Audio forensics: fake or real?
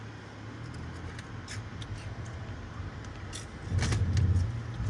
real